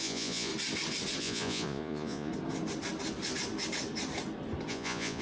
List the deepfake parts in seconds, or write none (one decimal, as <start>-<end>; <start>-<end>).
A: 0.0-0.5; 1.2-2.3; 4.7-5.2